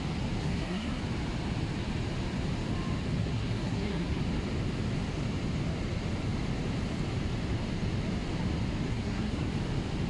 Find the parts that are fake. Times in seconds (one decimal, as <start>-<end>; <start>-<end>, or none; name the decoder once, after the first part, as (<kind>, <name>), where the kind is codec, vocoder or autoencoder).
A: 0.4-1.0 (codec, SNAC); 3.2-4.2; 8.9-9.5